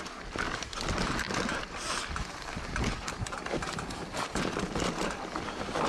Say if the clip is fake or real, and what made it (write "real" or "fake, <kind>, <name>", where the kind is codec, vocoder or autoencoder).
real